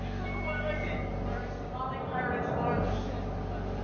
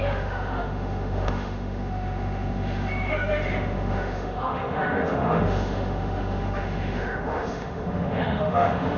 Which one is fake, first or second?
second